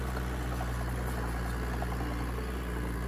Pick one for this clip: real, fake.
real